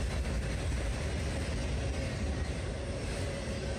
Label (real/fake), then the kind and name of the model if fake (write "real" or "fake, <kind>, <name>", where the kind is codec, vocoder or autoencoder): real